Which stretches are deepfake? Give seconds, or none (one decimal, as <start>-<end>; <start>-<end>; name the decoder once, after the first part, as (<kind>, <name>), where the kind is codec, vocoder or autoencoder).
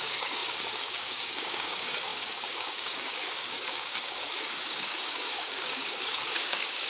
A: 0.0-6.9 (codec, DAC)